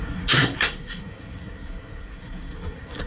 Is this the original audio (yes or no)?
no